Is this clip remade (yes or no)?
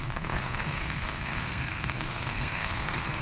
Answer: yes